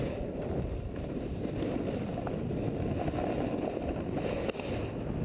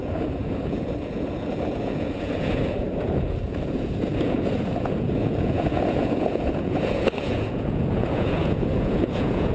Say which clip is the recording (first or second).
first